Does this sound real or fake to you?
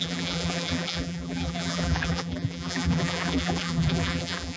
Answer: fake